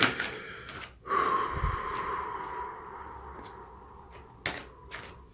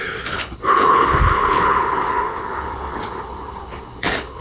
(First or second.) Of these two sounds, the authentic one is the first